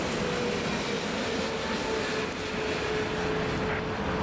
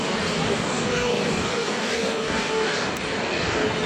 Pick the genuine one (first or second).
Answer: first